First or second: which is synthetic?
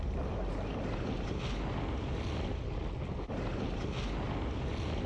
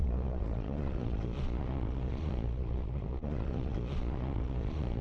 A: second